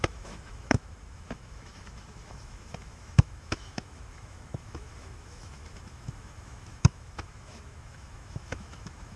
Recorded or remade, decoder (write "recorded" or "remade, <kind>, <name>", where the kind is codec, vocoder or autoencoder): remade, autoencoder, DAC-VAE